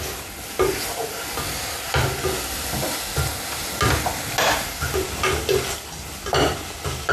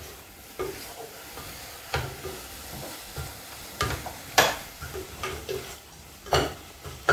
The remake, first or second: second